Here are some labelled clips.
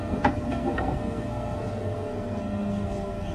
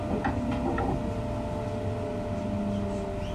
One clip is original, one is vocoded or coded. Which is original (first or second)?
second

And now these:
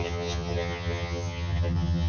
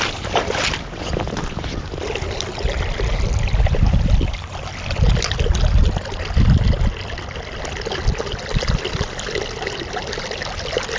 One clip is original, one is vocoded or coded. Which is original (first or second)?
second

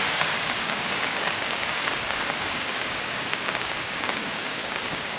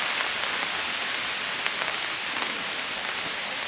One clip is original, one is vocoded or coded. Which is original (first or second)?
second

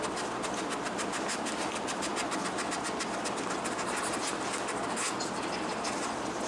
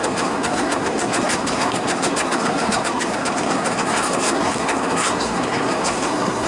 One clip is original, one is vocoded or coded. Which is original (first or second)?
first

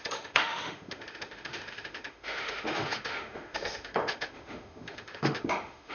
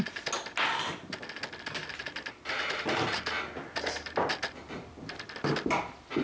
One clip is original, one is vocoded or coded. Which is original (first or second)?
second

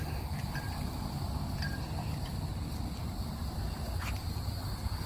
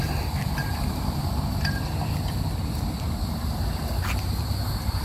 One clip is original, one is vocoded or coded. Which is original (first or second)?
second